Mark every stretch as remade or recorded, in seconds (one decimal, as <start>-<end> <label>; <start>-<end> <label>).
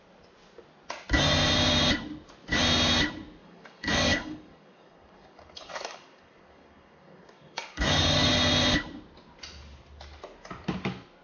0.0-3.4 recorded; 3.4-8.3 remade; 8.3-11.2 recorded